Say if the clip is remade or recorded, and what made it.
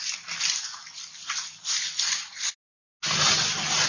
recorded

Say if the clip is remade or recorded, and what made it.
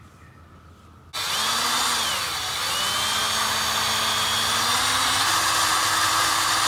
recorded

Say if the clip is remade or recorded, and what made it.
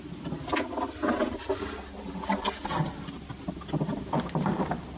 remade, vocoder, BigVGAN v2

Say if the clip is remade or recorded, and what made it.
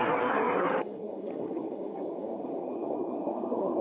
remade, codec, SNAC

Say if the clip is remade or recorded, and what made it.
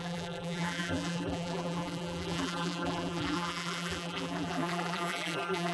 remade, vocoder, BigVGAN v2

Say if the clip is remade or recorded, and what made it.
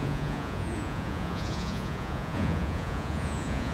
remade, vocoder, Vocos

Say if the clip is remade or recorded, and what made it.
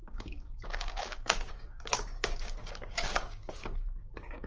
remade, codec, DAC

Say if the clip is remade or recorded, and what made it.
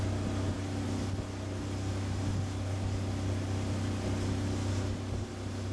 recorded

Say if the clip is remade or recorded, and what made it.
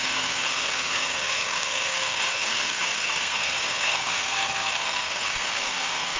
remade, codec, SNAC